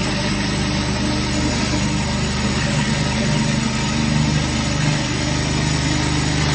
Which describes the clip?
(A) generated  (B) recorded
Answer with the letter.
B